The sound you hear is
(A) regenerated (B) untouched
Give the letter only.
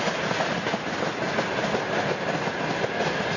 B